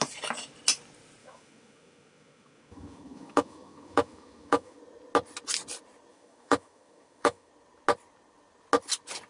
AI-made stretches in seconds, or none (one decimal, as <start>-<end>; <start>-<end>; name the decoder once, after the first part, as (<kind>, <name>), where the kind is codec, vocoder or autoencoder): 1.2-4.8 (autoencoder, DAC-VAE); 6.1-7.5